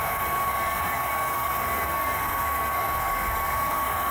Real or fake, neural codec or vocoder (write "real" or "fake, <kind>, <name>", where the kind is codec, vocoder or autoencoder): fake, codec, SNAC